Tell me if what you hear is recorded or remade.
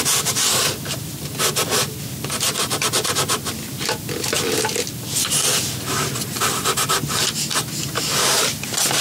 recorded